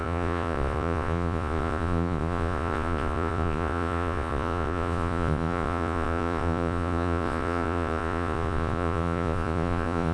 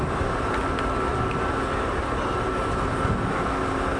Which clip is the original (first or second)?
second